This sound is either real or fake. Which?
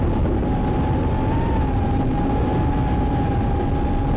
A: real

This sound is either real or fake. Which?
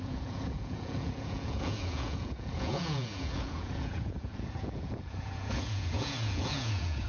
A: fake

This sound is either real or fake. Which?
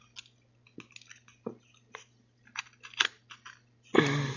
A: real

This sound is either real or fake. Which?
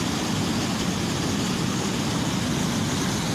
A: real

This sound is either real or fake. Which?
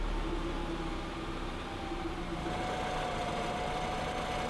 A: real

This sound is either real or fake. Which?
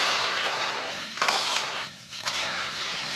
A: fake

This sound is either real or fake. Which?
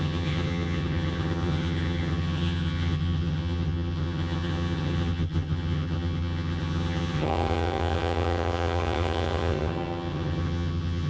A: fake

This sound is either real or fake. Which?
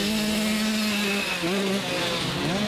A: real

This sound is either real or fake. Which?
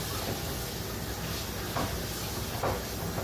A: real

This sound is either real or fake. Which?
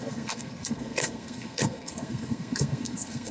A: fake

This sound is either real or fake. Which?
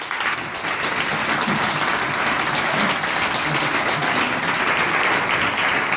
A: real